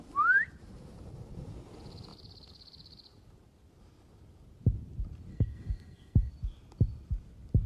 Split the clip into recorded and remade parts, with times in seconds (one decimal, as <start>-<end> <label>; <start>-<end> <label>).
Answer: 0.0-5.3 recorded; 5.3-6.3 remade; 6.3-7.7 recorded